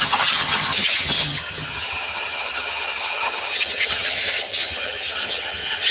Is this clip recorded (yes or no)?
no